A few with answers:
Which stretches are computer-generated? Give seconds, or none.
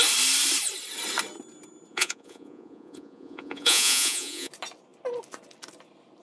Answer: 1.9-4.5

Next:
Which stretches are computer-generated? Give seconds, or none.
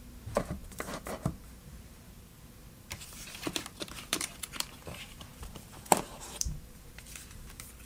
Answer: 0.0-5.3; 5.9-7.9